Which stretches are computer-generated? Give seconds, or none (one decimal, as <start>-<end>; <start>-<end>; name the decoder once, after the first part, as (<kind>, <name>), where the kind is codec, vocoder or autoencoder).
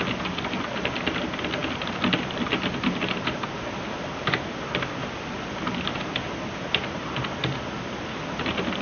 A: none